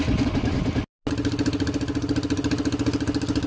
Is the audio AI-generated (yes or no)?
no